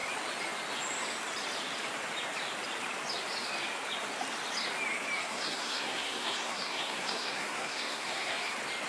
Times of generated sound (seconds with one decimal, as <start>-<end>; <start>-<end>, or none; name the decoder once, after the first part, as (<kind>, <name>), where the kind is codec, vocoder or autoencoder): 5.2-8.5 (codec, SNAC)